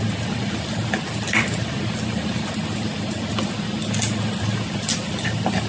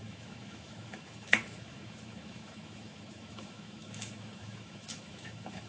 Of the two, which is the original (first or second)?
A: first